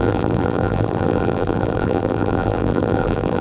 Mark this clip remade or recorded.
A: remade